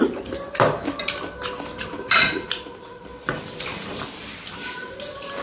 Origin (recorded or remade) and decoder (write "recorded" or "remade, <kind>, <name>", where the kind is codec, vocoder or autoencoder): recorded